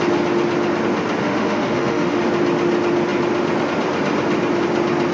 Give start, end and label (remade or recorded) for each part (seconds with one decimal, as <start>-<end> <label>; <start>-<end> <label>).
0.0-1.2 recorded; 1.2-2.2 remade; 2.2-5.1 recorded